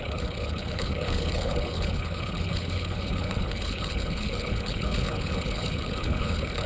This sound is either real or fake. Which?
fake